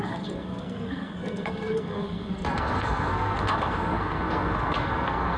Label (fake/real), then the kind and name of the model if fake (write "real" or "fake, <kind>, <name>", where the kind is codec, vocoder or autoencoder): fake, codec, SNAC